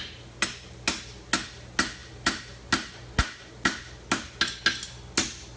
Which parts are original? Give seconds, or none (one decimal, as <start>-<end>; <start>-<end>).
0.0-5.6